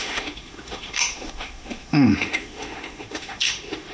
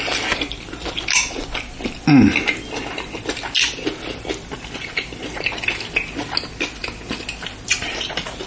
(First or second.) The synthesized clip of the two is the first